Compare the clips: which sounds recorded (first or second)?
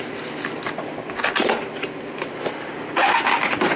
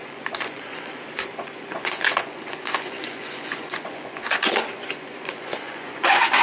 first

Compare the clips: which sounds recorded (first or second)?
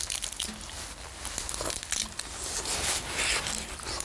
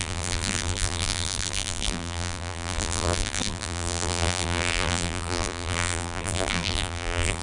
first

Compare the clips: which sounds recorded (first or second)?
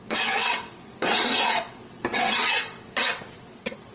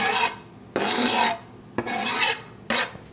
second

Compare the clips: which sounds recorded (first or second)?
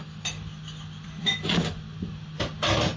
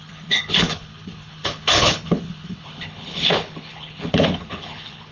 first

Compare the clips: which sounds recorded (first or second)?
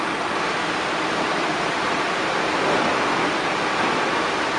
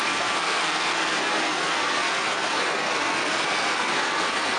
first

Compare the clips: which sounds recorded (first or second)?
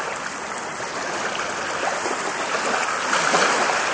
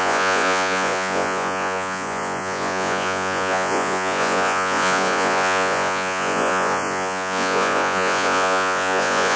first